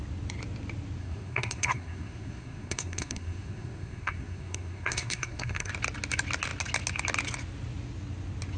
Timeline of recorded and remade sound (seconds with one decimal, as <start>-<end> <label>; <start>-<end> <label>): 0.0-1.0 recorded; 1.0-5.7 remade; 5.7-8.6 recorded